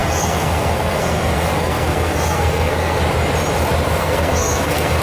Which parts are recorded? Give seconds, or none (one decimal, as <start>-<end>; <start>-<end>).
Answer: 3.0-4.0